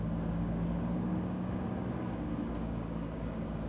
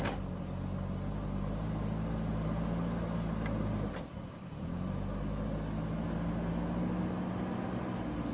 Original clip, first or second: second